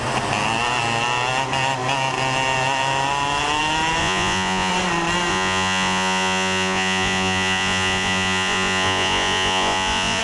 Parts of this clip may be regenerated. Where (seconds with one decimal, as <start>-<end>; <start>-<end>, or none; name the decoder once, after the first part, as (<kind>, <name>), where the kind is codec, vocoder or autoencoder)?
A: 4.0-4.7 (vocoder, Vocos); 5.3-10.2